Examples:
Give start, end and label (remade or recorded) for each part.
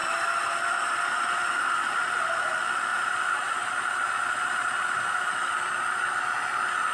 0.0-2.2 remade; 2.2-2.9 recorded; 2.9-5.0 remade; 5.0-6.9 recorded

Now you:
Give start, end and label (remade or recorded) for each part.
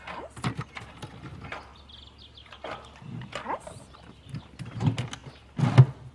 0.0-1.7 recorded; 1.7-4.4 remade; 4.4-6.1 recorded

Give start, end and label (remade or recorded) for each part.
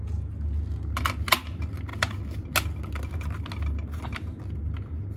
0.0-5.2 recorded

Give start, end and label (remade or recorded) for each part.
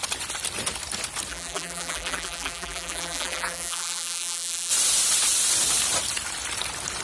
0.0-1.3 recorded; 1.3-4.7 remade; 4.7-7.0 recorded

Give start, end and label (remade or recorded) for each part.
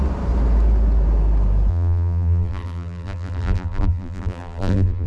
0.0-1.7 recorded; 1.7-5.1 remade